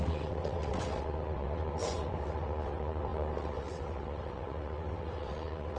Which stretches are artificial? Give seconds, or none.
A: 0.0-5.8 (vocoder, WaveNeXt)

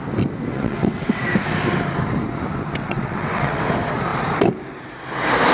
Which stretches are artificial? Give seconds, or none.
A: 0.5-1.2 (vocoder, WaveNeXt); 2.8-3.6

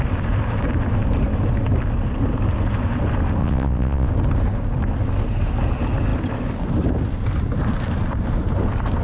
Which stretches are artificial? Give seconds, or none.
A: 3.4-4.1 (vocoder, WaveNeXt)

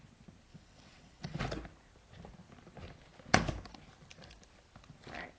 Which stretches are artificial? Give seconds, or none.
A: 0.5-1.4 (vocoder, WaveNeXt)

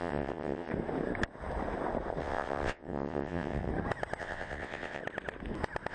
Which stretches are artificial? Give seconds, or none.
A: 0.0-0.7 (vocoder, WaveNeXt); 2.2-3.7; 4.2-5.0

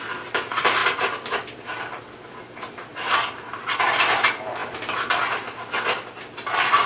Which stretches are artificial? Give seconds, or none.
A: none

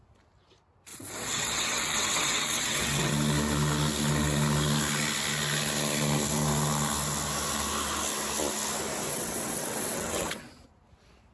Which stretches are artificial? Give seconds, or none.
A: 0.9-3.1 (vocoder, WaveNeXt); 9.1-10.4

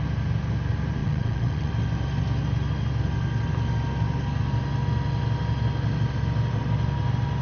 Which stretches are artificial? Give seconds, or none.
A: 1.0-1.7 (vocoder, WaveNeXt)